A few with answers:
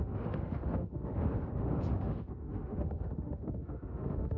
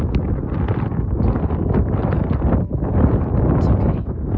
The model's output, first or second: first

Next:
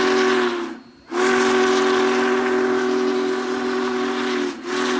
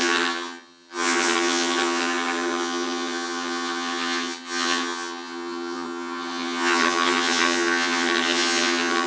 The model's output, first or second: second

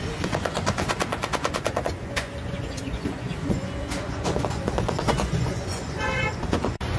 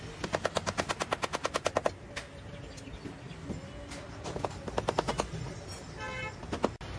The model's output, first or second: first